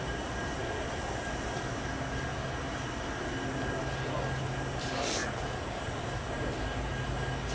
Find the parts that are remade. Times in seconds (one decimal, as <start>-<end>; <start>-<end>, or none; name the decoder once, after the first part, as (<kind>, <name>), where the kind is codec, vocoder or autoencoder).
none